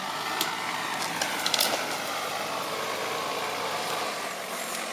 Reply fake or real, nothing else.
real